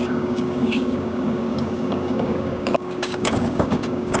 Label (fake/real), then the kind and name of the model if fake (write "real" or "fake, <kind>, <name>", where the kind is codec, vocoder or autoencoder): fake, codec, DAC